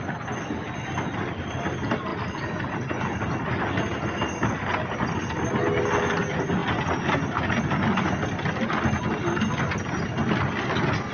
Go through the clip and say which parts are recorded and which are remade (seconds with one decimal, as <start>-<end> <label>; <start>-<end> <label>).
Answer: 0.0-11.1 recorded